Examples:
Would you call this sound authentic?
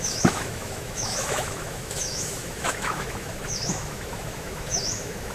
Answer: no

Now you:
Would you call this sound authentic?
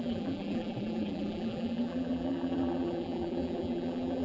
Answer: no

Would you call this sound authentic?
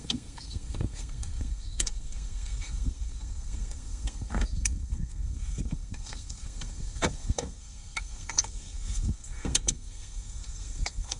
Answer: no